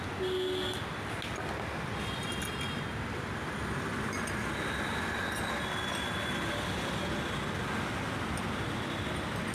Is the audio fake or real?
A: real